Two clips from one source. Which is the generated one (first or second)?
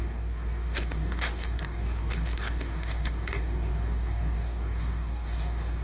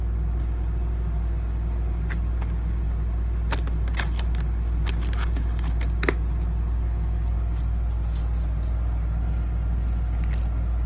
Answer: first